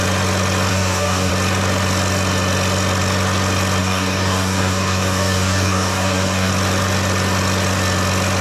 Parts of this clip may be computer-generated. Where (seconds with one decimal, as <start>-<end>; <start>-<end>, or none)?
0.7-1.3; 3.8-6.5